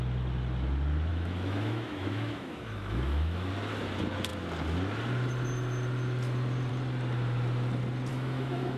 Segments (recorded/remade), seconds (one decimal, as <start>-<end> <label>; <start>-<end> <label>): 0.0-1.1 recorded; 1.1-3.5 remade; 3.5-8.1 recorded; 8.1-8.8 remade